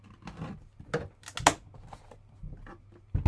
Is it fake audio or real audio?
real